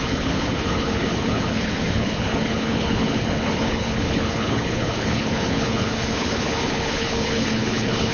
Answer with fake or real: fake